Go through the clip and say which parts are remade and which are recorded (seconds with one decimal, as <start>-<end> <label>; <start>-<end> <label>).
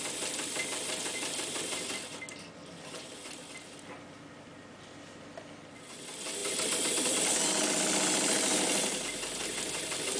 0.0-10.2 recorded